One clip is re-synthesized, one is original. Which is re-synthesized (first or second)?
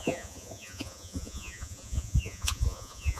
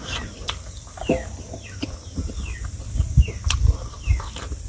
first